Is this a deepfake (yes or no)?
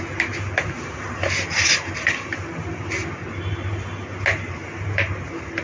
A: no